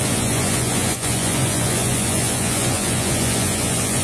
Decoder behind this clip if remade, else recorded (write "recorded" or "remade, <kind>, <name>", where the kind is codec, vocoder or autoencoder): remade, vocoder, Vocos